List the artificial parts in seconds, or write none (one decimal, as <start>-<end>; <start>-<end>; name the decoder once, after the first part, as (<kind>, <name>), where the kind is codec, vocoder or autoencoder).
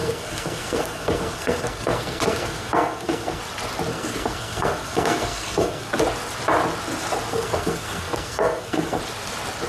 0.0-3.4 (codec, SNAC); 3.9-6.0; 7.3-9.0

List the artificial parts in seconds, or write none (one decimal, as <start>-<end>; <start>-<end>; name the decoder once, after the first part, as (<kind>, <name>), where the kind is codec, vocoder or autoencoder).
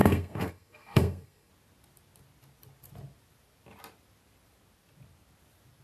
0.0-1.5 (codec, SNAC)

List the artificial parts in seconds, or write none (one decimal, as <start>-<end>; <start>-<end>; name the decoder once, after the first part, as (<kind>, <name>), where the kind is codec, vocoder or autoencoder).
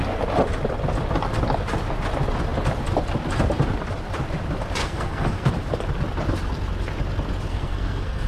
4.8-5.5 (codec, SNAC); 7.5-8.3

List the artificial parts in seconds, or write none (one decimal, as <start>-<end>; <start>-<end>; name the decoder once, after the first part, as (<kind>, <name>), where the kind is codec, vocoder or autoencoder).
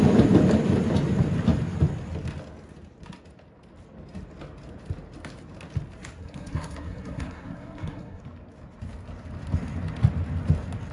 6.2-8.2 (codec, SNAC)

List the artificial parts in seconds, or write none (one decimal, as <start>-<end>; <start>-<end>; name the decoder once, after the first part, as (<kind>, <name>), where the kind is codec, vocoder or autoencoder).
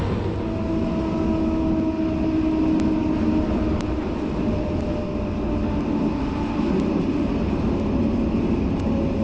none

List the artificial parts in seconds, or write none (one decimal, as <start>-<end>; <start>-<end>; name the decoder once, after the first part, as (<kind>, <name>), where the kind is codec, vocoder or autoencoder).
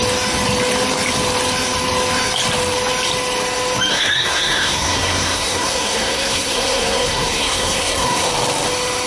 3.9-8.3 (codec, SNAC)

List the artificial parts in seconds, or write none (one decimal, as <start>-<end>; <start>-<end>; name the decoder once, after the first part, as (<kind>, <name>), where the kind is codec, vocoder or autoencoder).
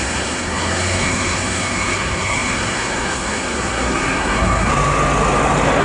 0.0-4.7 (codec, SNAC)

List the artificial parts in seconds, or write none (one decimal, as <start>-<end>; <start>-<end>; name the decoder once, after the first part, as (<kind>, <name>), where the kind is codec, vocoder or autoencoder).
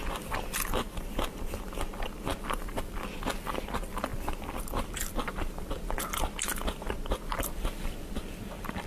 none